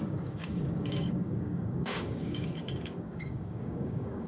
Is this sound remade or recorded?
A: remade